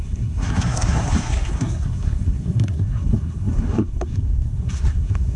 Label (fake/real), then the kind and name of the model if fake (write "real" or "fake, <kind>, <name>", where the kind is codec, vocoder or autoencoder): fake, codec, SNAC